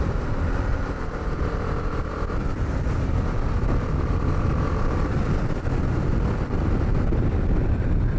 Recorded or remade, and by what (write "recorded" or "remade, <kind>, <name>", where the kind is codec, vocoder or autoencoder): recorded